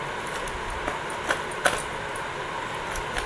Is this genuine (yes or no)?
yes